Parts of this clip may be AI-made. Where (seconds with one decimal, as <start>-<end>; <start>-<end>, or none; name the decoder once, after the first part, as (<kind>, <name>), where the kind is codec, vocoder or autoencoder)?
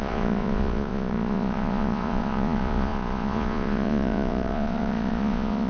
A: 0.0-5.7 (vocoder, Vocos)